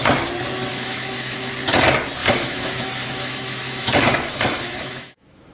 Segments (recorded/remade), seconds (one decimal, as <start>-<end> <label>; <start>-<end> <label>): 0.0-0.7 recorded; 0.7-1.5 remade; 1.5-2.2 recorded; 2.2-5.5 remade

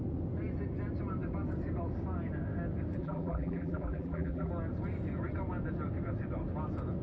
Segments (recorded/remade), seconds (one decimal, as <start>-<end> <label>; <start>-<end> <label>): 0.0-3.0 recorded; 3.0-4.5 remade; 4.5-7.0 recorded

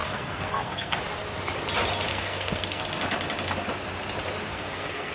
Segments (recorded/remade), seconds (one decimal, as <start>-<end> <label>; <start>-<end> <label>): 0.0-1.0 remade; 1.0-2.1 recorded; 2.1-2.8 remade; 2.8-4.5 recorded; 4.5-5.1 remade

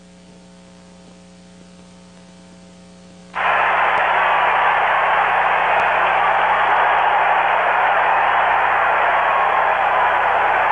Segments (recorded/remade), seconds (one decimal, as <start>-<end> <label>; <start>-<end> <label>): 0.0-10.7 recorded

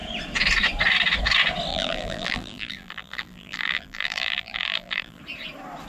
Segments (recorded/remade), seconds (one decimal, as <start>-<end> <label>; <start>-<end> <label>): 0.0-1.7 recorded; 1.7-5.2 remade; 5.2-5.9 recorded

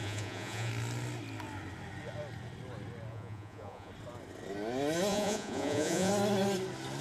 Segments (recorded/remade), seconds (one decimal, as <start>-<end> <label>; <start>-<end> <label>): 0.0-0.7 remade; 0.7-3.1 recorded; 3.1-3.9 remade; 3.9-5.1 recorded; 5.1-6.1 remade; 6.1-7.0 recorded

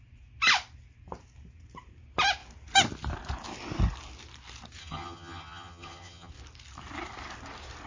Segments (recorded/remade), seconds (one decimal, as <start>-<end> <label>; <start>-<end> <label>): 0.0-4.8 recorded; 4.8-6.3 remade; 6.3-7.9 recorded